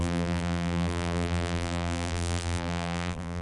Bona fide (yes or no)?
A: no